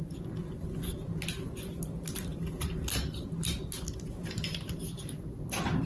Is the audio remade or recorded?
recorded